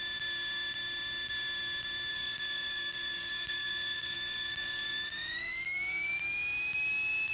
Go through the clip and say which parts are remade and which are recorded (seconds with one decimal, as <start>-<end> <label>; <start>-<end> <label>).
0.0-2.1 recorded; 2.1-6.3 remade; 6.3-7.3 recorded